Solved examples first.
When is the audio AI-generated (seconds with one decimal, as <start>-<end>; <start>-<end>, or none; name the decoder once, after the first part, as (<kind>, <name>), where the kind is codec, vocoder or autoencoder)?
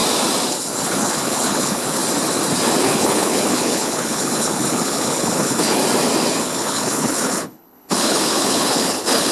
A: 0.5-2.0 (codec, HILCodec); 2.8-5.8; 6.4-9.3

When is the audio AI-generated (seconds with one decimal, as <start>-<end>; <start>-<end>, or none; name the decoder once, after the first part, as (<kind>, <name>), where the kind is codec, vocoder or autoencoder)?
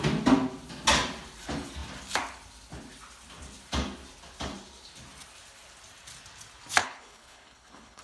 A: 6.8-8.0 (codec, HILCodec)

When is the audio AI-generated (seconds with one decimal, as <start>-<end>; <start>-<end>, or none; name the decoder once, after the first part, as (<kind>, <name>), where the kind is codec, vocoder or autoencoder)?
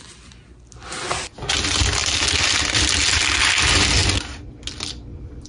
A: none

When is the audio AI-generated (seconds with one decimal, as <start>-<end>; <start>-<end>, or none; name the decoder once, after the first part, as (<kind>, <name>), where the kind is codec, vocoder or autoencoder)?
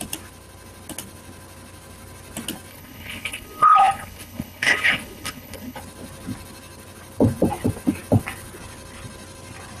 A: 2.7-5.8 (codec, HILCodec)